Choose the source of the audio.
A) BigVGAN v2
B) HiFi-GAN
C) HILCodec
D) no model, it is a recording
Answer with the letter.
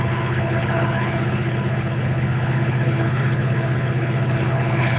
C